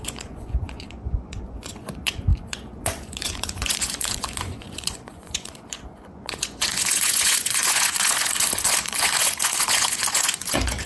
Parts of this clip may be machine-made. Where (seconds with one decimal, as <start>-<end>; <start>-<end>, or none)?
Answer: 0.0-10.9